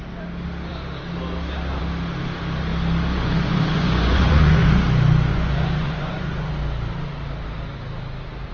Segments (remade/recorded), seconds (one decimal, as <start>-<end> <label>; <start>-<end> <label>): 0.0-3.1 recorded; 3.1-4.8 remade; 4.8-5.3 recorded; 5.3-6.5 remade; 6.5-8.5 recorded